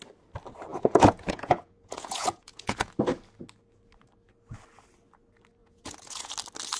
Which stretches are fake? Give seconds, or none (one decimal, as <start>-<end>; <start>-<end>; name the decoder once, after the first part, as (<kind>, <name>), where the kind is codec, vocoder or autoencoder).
0.7-2.9 (vocoder, Vocos); 5.6-6.3